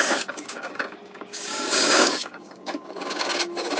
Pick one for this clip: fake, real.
fake